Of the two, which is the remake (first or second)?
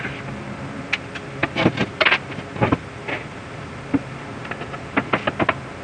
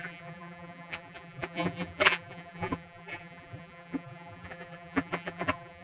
second